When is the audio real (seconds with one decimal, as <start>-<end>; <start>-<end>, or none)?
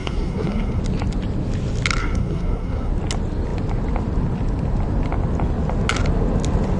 0.8-2.0; 2.9-6.8